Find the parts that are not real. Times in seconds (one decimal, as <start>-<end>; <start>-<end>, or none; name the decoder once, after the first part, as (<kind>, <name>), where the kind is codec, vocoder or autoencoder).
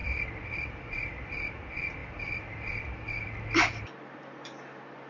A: 0.0-1.4 (vocoder, BigVGAN v2); 2.0-5.1